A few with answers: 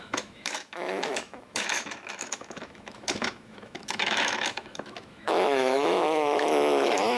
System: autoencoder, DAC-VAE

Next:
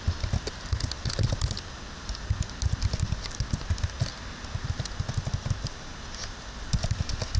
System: none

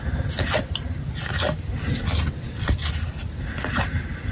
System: none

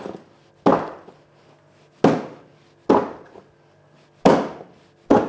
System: none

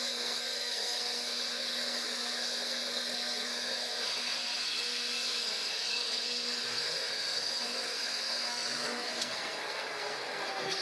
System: codec, SNAC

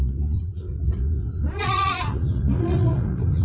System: vocoder, Vocos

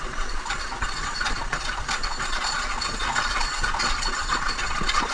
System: vocoder, Vocos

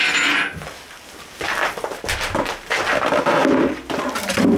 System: none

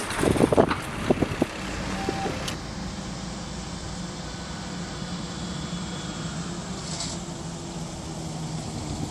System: none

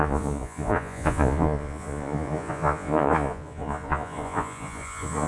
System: vocoder, Vocos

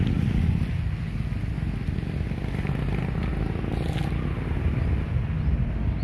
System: none